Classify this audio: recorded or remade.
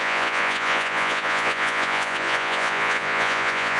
remade